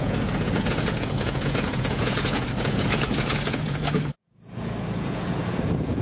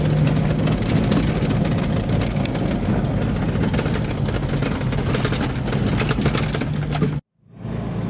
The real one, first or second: second